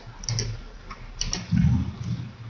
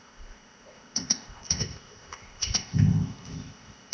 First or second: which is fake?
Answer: second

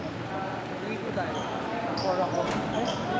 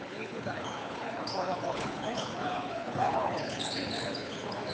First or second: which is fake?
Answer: second